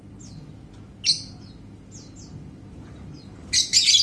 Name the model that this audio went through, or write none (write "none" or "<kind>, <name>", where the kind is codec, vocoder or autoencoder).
none